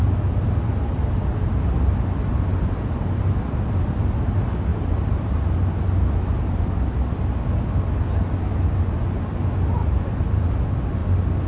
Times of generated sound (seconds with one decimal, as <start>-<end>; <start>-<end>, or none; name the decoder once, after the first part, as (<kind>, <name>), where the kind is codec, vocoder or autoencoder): 2.5-3.2 (vocoder, BigVGAN v2); 4.7-5.4; 9.8-10.6